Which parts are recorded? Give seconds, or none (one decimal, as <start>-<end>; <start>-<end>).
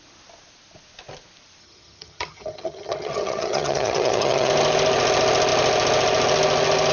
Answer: 0.0-1.6; 4.5-6.9